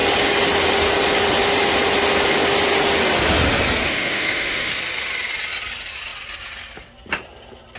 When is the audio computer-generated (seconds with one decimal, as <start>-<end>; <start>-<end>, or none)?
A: 3.8-4.7

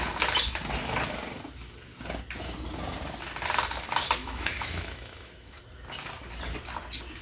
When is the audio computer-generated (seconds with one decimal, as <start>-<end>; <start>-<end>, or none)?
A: 4.2-5.6